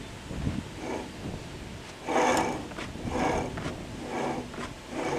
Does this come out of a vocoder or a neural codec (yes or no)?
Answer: no